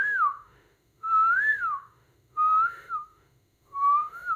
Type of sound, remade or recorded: remade